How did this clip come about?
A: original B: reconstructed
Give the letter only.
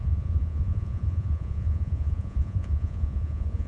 B